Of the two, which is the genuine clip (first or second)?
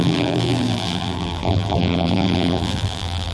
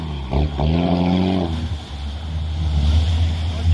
second